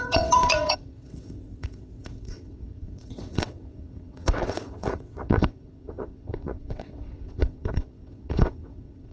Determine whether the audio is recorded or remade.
remade